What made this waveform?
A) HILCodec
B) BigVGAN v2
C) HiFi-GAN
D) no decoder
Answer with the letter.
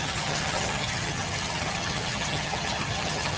C